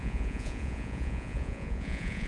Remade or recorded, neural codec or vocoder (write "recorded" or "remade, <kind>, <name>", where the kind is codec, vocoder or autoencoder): remade, vocoder, Vocos